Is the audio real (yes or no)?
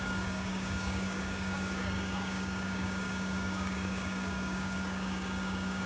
no